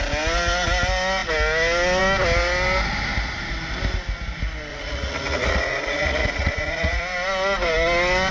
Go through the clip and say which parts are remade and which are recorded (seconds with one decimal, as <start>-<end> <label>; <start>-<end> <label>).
0.0-4.7 recorded; 4.7-7.0 remade; 7.0-8.3 recorded